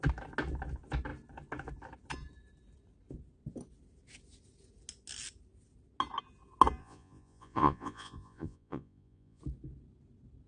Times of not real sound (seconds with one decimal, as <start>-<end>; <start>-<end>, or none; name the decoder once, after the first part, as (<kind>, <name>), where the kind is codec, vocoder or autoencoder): 6.8-9.4 (vocoder, Vocos)